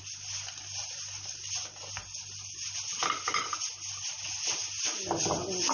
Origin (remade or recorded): recorded